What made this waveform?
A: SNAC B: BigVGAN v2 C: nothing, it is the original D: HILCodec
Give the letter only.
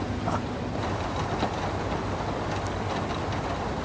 C